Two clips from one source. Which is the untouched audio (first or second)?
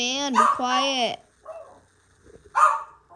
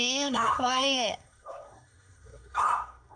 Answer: first